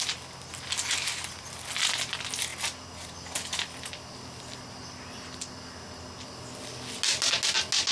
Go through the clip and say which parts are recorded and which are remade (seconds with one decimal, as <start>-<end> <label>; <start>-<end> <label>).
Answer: 0.0-7.9 recorded